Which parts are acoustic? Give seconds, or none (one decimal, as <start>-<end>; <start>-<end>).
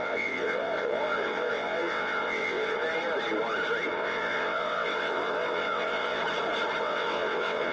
2.8-3.9; 6.2-6.8